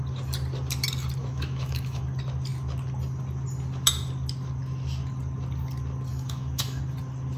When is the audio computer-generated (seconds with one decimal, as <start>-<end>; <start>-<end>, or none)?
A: 1.2-2.0; 6.1-6.8